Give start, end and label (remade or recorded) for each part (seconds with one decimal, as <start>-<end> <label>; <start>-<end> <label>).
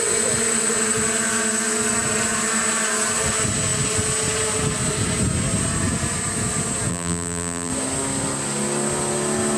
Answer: 0.0-6.9 recorded; 6.9-7.7 remade; 7.7-9.6 recorded